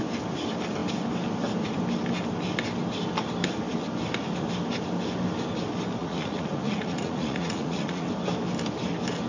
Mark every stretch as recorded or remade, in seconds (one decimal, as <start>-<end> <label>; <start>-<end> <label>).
0.0-6.0 recorded; 6.0-8.1 remade; 8.1-9.3 recorded